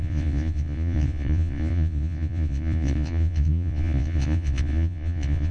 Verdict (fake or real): fake